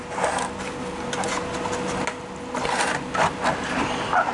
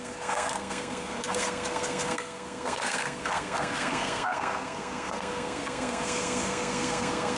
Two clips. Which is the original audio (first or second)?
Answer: first